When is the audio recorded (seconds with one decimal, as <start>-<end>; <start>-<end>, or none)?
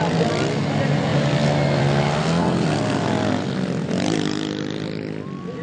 0.0-5.6